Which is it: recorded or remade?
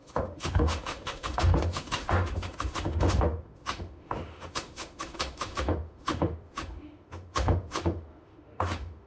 remade